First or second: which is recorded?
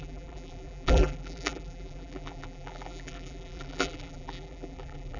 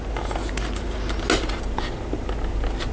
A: second